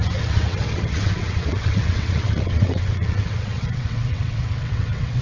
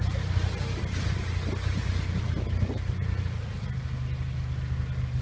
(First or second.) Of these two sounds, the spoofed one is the first